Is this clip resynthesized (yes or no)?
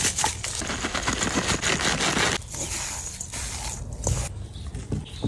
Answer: no